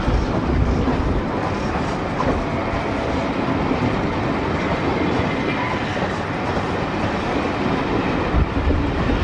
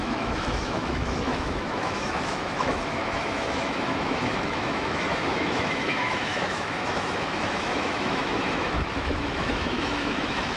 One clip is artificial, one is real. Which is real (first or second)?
first